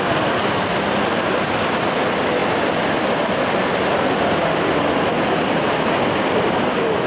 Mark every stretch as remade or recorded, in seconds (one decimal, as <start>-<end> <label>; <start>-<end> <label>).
0.0-7.1 recorded